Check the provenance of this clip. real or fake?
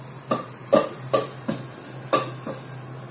real